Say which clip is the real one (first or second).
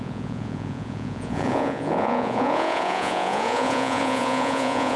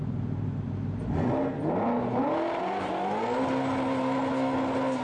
second